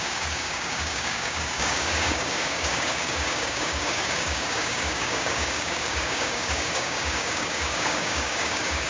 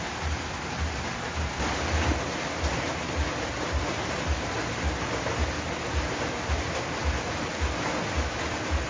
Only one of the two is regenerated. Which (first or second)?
first